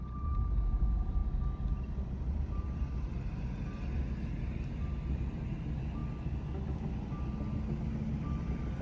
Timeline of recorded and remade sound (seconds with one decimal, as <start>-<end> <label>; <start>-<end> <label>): 0.0-8.8 recorded